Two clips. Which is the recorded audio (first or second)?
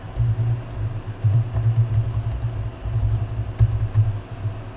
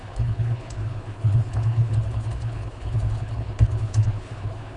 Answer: first